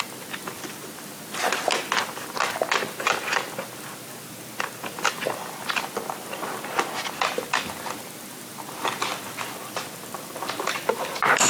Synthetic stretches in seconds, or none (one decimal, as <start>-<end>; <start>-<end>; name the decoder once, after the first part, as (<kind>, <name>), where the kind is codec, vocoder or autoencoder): 9.1-11.5 (vocoder, BigVGAN v2)